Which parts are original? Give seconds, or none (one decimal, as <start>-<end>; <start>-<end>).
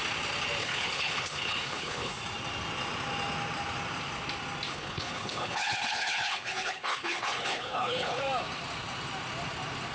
0.0-0.6; 2.1-4.7; 8.2-9.9